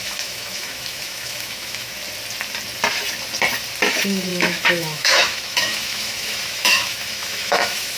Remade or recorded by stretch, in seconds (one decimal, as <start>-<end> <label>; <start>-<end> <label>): 0.0-1.9 remade; 1.9-3.9 recorded; 3.9-8.0 remade